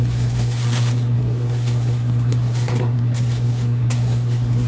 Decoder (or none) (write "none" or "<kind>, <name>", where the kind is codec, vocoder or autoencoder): codec, SNAC